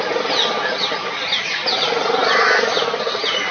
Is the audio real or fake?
real